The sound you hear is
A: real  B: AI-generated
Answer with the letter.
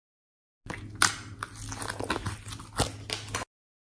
A